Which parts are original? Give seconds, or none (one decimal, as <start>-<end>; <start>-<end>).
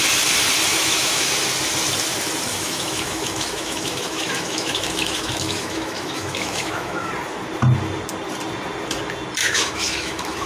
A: 0.0-0.7; 1.3-2.5; 7.1-9.4